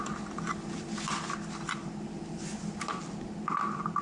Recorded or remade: recorded